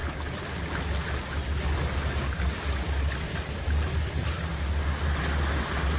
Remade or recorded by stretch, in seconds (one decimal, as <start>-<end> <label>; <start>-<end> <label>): 0.0-6.0 recorded